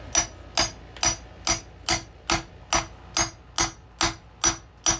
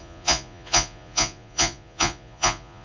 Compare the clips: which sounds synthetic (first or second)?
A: second